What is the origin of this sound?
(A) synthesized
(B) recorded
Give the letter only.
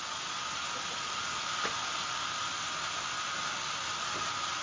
B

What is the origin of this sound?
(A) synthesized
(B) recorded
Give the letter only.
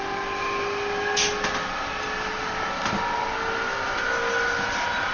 B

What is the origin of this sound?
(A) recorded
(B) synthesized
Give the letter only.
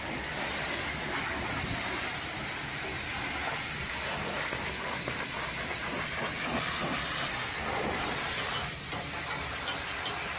A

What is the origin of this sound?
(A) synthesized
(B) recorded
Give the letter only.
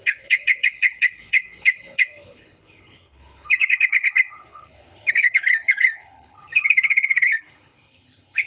A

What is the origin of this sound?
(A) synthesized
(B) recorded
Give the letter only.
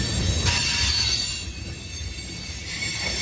B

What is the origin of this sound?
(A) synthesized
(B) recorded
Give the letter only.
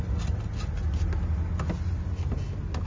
B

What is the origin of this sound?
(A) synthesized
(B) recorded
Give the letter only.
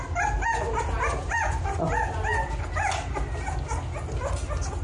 B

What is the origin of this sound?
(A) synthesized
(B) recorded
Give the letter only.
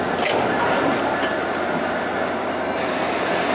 B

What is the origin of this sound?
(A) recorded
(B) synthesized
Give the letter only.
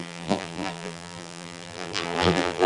B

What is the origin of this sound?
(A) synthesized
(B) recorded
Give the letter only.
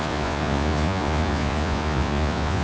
A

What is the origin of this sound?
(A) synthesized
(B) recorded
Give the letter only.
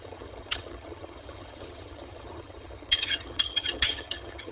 A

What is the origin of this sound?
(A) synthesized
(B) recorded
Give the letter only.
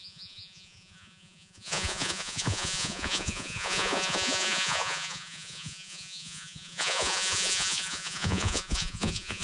A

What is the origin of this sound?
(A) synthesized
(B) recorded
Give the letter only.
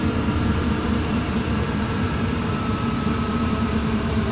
A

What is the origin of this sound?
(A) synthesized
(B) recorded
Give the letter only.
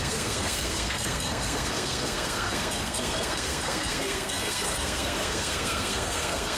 A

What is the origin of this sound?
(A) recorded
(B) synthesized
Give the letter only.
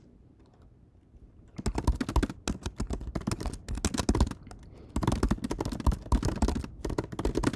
A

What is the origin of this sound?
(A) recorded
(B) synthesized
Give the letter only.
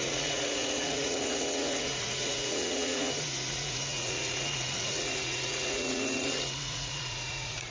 B